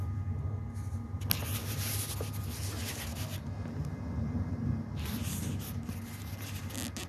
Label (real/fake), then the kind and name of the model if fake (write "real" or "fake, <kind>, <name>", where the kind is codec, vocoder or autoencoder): real